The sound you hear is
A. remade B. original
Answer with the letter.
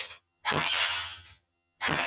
A